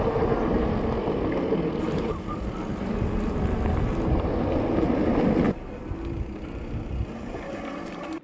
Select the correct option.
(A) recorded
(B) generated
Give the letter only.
A